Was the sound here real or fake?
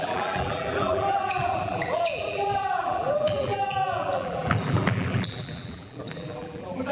fake